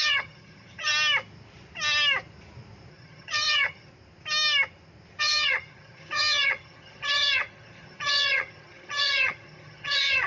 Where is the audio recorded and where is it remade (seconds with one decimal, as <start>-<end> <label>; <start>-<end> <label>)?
0.0-0.9 remade; 0.9-2.9 recorded; 2.9-3.9 remade; 3.9-5.2 recorded; 5.2-10.3 remade